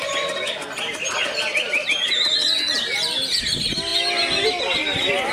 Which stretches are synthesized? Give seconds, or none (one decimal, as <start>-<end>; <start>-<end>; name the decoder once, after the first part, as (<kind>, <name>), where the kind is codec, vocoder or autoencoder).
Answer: none